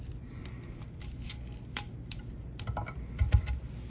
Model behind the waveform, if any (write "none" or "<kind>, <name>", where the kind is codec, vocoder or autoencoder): vocoder, BigVGAN v2